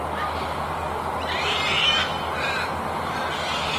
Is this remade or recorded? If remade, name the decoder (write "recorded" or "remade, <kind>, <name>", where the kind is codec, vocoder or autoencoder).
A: recorded